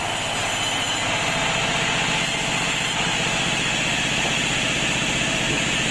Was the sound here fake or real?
real